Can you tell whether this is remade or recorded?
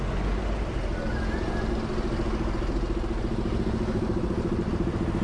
recorded